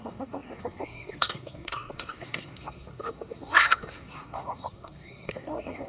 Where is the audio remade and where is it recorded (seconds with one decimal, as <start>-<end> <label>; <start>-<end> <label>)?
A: 0.0-5.9 remade